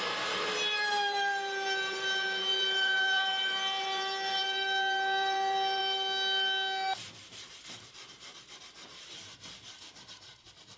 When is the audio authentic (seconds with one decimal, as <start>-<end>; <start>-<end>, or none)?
5.8-7.0